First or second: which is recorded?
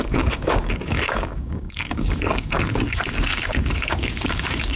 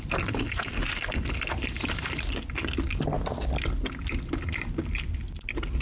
second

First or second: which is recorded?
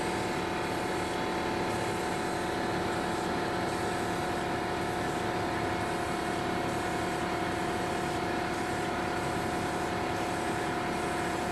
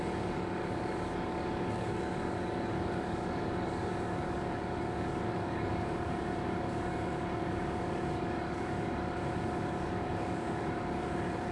first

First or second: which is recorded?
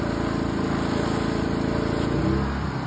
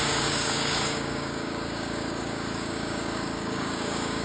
first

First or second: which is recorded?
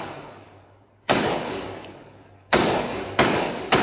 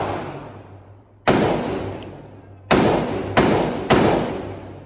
second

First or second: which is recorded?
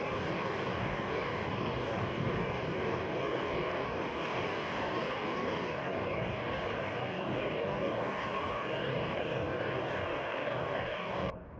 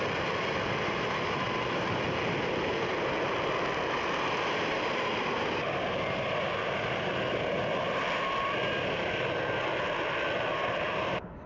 second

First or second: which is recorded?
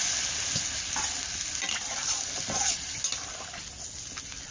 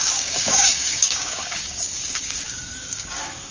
first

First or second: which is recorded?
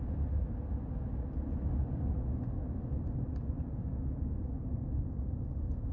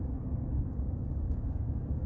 first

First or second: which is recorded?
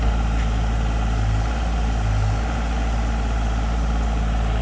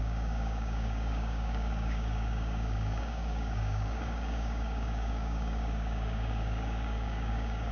first